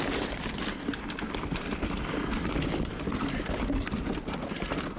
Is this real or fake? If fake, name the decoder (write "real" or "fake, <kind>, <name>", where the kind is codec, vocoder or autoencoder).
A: real